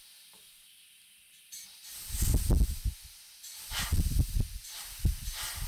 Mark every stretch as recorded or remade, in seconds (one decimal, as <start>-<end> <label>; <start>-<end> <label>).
0.0-5.7 recorded